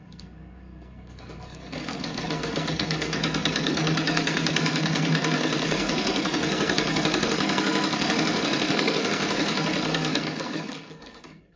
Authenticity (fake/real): fake